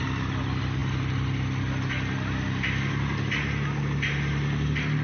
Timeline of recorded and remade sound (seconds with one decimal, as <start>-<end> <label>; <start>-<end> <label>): 0.0-5.0 recorded